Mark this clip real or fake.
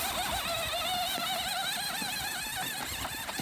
real